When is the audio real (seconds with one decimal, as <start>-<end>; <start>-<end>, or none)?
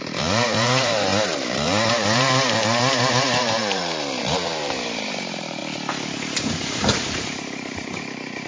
5.6-6.4